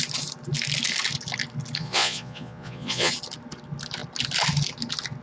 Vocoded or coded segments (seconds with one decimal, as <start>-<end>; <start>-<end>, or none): 1.8-3.1